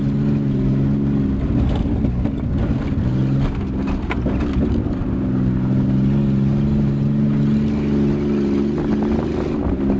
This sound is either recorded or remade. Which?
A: recorded